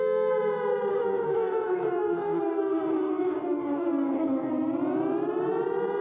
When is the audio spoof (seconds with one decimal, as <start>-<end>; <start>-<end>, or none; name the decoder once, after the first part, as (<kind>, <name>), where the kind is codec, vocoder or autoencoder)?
0.9-4.5 (codec, DAC)